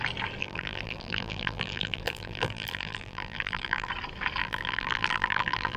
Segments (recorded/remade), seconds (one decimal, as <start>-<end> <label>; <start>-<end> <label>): 0.0-0.4 recorded; 0.4-3.9 remade; 3.9-4.4 recorded; 4.4-5.8 remade